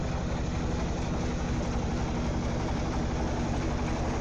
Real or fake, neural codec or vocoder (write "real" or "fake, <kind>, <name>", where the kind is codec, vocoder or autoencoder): real